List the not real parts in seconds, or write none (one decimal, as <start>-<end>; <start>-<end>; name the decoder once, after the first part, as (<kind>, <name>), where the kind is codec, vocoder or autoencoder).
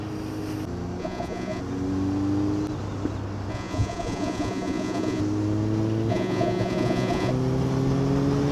1.0-1.6 (vocoder, Vocos); 3.5-5.2; 6.1-7.3